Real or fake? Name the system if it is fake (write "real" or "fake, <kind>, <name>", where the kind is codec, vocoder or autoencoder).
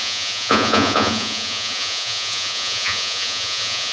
fake, vocoder, Vocos